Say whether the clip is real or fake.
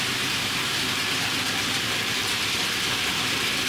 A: real